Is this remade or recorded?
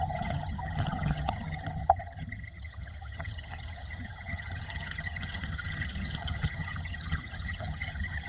remade